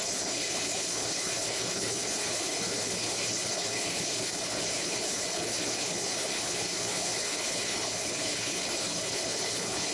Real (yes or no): no